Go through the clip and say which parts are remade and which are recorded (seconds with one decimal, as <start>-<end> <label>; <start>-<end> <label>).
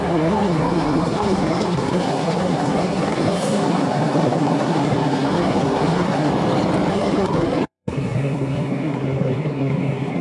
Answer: 0.0-6.3 remade; 6.3-6.9 recorded; 6.9-10.2 remade